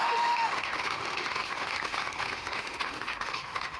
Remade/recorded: remade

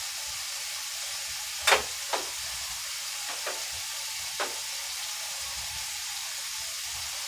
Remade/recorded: recorded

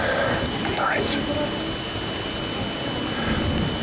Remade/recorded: recorded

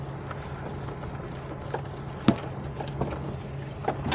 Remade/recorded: recorded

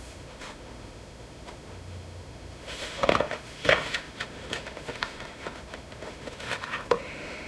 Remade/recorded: remade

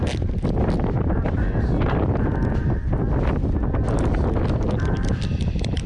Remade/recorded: recorded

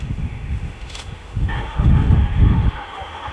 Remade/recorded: remade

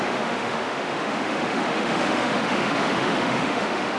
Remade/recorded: remade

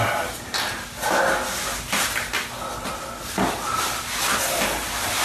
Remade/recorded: recorded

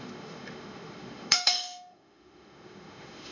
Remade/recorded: remade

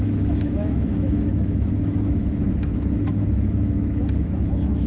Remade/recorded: remade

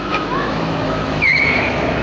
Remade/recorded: remade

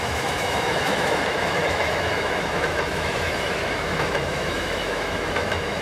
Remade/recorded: remade